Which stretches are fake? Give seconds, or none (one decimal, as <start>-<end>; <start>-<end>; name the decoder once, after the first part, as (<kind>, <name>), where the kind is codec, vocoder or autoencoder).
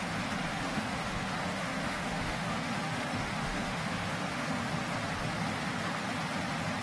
0.5-4.6 (autoencoder, DAC-VAE)